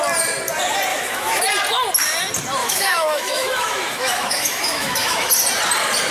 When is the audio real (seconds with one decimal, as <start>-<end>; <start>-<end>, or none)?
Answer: 0.0-0.9; 1.4-2.6; 5.3-6.1